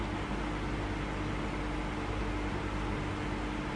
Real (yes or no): yes